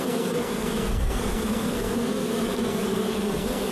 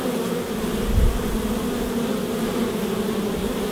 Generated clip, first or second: first